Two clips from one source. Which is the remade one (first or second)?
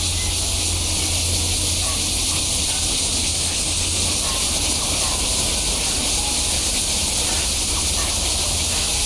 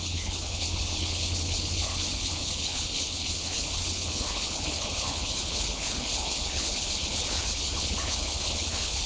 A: second